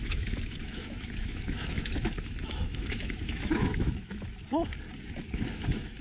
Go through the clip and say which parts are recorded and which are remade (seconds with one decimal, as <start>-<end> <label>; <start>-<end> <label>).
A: 0.0-4.4 remade; 4.4-5.5 recorded; 5.5-6.0 remade